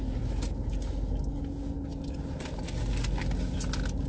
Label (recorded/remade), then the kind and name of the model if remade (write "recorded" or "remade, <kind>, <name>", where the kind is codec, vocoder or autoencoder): recorded